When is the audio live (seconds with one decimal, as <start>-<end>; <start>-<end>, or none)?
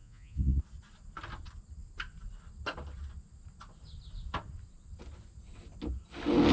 0.6-6.5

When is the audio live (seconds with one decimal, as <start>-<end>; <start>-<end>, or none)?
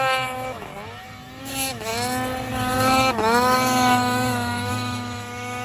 0.7-1.4; 1.9-2.5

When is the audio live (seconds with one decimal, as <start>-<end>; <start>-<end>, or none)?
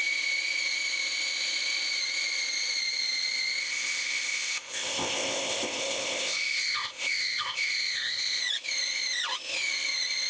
0.0-3.6; 8.4-10.3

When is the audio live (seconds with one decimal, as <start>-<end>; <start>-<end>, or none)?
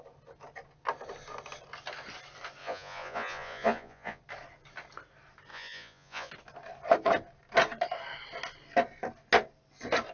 0.0-2.6; 4.2-5.5; 6.3-10.1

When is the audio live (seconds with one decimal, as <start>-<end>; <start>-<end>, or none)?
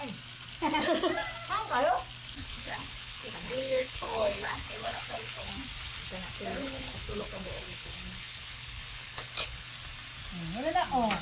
0.0-2.4; 5.5-6.5; 9.6-11.2